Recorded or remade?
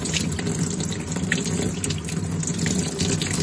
recorded